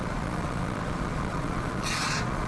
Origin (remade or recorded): remade